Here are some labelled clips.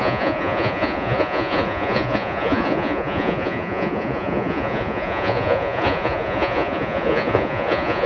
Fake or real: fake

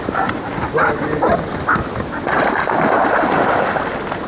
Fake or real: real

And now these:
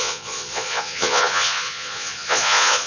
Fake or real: fake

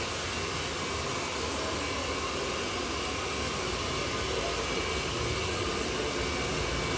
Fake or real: real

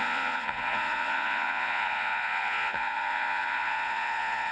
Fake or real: fake